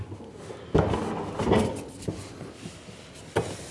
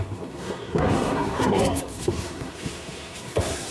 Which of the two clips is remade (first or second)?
second